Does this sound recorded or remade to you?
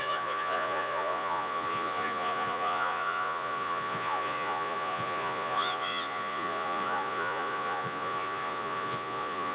remade